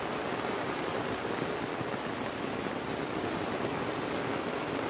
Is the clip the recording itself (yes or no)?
yes